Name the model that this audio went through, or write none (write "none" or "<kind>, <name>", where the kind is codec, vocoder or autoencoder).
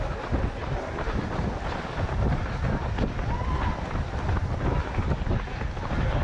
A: none